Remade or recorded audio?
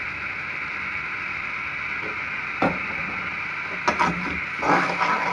recorded